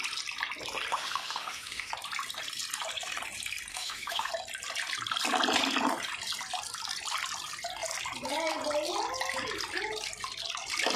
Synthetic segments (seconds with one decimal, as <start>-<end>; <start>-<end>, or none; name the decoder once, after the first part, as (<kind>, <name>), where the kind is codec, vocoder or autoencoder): 0.9-1.9 (autoencoder, DAC-VAE); 3.7-4.3